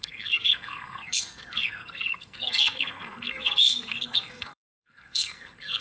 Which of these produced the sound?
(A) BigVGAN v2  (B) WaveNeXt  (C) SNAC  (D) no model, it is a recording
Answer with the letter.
C